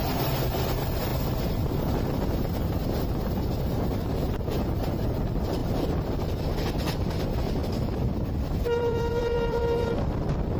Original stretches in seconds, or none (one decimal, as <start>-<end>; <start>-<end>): 1.1-3.3